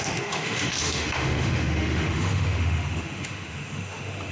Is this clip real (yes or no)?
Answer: no